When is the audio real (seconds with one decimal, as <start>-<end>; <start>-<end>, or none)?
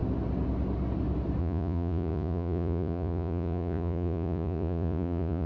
0.0-1.4